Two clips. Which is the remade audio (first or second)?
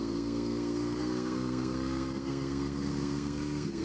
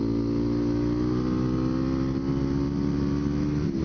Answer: first